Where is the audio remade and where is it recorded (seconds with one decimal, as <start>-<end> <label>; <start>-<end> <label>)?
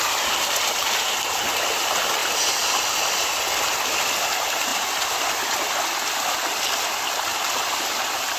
0.0-4.7 recorded; 4.7-5.3 remade; 5.3-7.3 recorded; 7.3-8.0 remade; 8.0-8.4 recorded